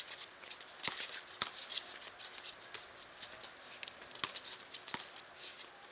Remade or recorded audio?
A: recorded